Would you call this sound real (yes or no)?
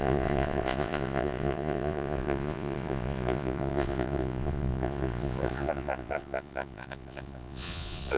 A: no